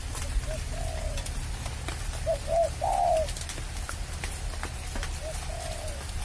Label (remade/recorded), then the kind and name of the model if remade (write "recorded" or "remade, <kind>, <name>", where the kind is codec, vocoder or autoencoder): recorded